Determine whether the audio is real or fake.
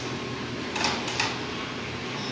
real